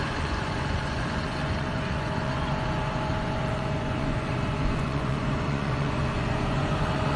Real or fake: fake